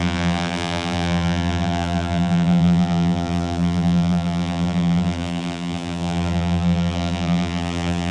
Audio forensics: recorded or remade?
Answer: remade